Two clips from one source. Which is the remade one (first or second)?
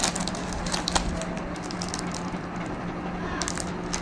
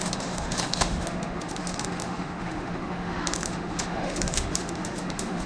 second